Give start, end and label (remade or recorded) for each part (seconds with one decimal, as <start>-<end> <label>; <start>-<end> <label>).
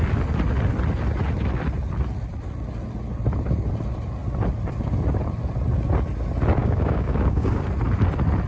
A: 0.0-6.6 recorded; 6.6-7.6 remade; 7.6-8.5 recorded